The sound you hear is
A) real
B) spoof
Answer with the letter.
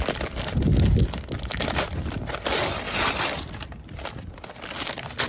A